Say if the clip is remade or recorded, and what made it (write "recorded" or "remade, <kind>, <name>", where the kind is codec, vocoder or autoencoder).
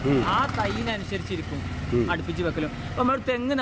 recorded